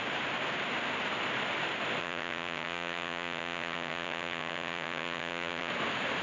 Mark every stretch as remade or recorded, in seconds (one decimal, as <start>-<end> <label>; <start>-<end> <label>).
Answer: 0.0-2.0 recorded; 2.0-5.7 remade; 5.7-6.2 recorded